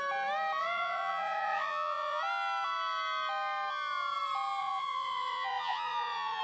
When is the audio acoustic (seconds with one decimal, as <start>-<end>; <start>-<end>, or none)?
0.0-0.6; 2.2-4.6